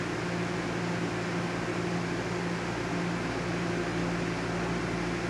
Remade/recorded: recorded